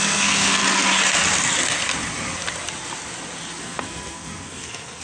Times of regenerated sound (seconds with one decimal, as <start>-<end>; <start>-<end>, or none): 0.0-0.6; 3.6-5.0